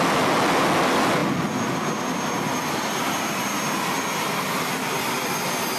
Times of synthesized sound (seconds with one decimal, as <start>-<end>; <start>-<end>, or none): none